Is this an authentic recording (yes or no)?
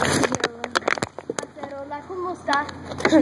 yes